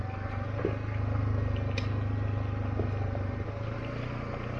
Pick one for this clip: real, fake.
real